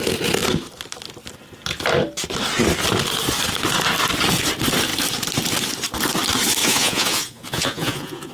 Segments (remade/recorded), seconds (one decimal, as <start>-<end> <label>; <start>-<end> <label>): 0.0-6.6 recorded; 6.6-8.3 remade